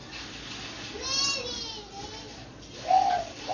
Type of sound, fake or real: real